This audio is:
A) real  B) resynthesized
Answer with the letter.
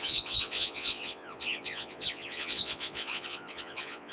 B